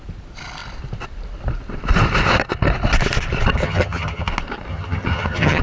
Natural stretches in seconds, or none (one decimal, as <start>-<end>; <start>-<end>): 0.0-3.6; 4.3-4.7